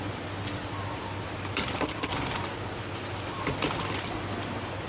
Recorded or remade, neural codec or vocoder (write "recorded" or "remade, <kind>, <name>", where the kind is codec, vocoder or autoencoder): remade, vocoder, BigVGAN v2